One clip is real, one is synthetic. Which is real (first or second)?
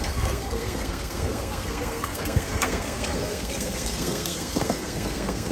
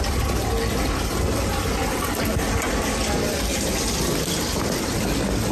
second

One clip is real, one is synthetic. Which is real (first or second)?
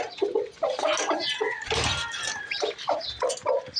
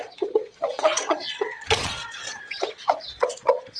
first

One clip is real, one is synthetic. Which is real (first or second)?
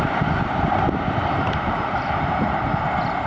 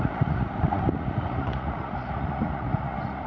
first